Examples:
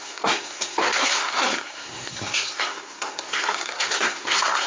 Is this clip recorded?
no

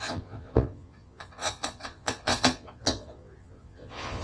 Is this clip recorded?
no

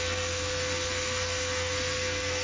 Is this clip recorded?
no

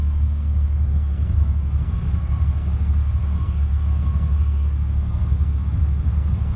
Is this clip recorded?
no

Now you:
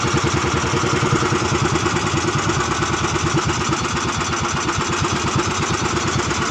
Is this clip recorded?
yes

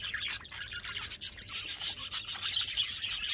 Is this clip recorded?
yes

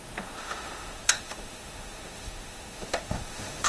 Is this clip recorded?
no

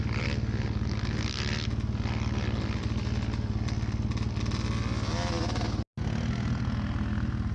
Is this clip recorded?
yes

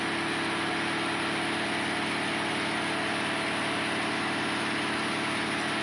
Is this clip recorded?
yes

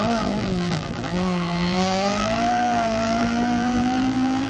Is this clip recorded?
no